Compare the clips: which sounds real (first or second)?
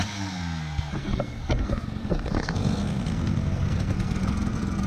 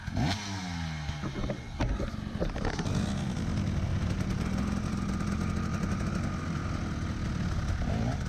second